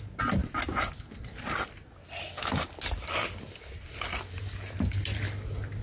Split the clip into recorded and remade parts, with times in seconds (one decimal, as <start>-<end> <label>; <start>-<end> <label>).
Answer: 0.0-5.8 recorded